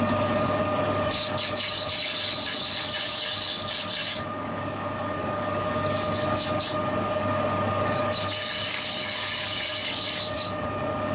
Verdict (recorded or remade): remade